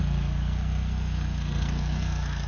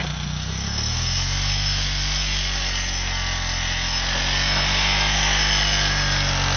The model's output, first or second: first